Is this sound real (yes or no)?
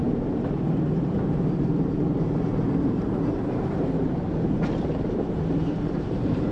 no